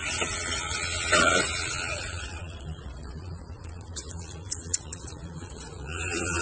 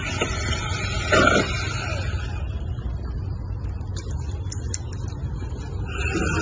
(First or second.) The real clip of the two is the second